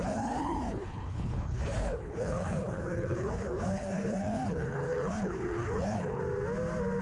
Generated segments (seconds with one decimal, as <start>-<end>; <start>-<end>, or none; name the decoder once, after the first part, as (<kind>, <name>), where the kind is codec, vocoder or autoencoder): 0.0-6.2 (codec, HILCodec)